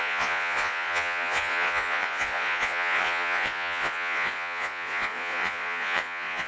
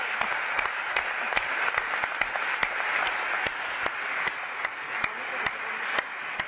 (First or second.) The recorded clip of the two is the second